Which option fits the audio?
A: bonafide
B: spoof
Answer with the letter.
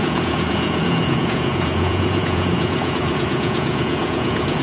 B